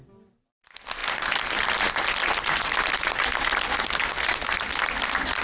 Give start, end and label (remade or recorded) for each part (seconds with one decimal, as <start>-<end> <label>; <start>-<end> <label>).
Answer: 0.0-5.4 recorded

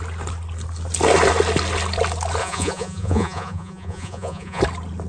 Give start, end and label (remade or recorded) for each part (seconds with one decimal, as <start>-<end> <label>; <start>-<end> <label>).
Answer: 0.0-2.4 recorded; 2.4-4.6 remade; 4.6-5.1 recorded

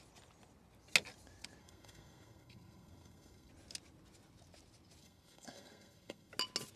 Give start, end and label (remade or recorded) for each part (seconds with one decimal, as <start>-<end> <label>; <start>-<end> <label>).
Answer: 0.0-1.6 recorded; 1.6-3.5 remade; 3.5-5.0 recorded; 5.0-6.3 remade; 6.3-6.8 recorded

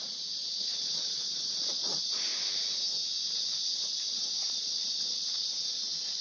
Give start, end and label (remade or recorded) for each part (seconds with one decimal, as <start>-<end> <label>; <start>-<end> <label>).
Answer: 0.0-2.3 remade; 2.3-3.2 recorded; 3.2-6.2 remade

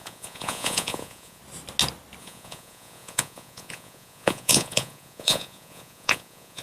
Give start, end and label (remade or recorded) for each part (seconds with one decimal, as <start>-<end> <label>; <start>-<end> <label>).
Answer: 0.0-1.4 remade; 1.4-2.2 recorded; 2.2-6.6 remade

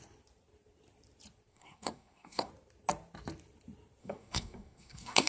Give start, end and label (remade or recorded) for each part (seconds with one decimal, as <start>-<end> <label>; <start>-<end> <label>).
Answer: 0.0-1.5 recorded; 1.5-2.5 remade; 2.5-4.0 recorded; 4.0-5.3 remade

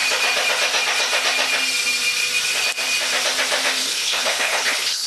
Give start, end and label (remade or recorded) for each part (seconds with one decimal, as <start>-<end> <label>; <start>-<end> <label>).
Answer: 0.0-3.8 recorded; 3.8-5.1 remade